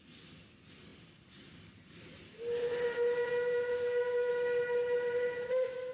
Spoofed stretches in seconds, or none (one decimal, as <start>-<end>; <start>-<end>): 3.7-4.3